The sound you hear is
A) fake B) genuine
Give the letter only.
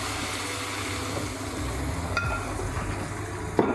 B